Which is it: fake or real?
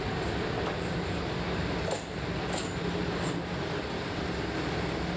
real